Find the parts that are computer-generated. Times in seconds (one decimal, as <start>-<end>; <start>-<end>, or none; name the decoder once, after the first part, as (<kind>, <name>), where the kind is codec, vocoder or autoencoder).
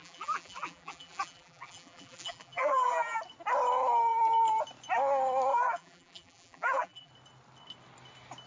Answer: 0.0-3.2 (vocoder, BigVGAN v2); 5.5-7.1